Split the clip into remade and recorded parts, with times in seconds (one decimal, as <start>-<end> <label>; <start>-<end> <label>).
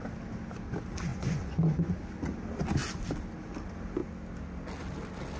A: 0.0-1.1 recorded; 1.1-1.9 remade; 1.9-5.4 recorded